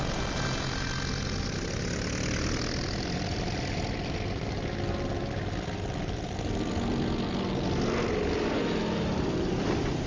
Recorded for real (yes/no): yes